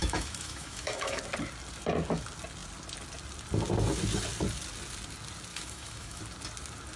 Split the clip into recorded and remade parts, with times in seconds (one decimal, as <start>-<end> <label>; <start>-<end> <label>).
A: 0.0-1.2 remade; 1.2-5.5 recorded; 5.5-6.2 remade; 6.2-7.0 recorded